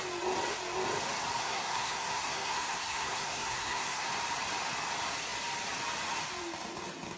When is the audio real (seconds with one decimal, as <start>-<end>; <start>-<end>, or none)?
0.0-1.4; 4.1-7.2

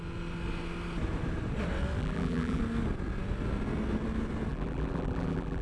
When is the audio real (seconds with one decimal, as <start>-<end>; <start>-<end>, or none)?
0.0-2.0; 2.6-4.5